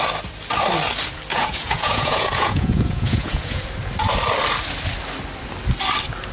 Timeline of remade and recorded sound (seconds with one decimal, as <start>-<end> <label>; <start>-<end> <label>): 0.0-1.3 recorded; 1.3-3.6 remade; 3.6-6.3 recorded